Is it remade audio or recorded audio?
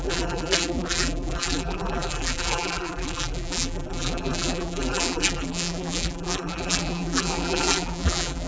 remade